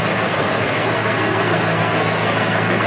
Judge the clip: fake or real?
fake